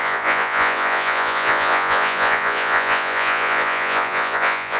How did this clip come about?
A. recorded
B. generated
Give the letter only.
B